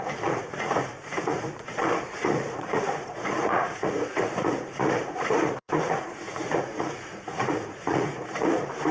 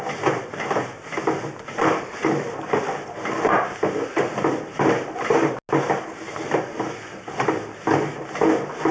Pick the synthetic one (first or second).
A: first